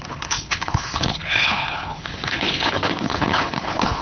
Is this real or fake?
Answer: fake